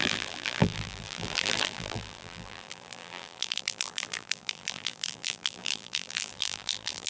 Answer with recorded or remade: remade